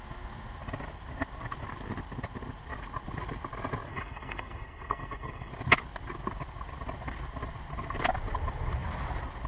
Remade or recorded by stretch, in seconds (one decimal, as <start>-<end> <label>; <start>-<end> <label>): 0.0-3.9 recorded; 3.9-5.5 remade; 5.5-9.5 recorded